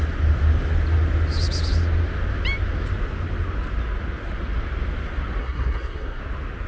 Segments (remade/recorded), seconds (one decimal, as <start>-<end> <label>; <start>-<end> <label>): 0.0-5.4 recorded; 5.4-6.2 remade; 6.2-6.7 recorded